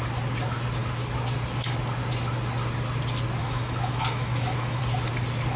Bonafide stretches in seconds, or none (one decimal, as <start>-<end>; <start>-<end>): 0.0-3.4; 4.8-5.6